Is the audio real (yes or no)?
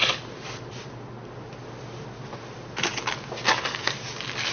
yes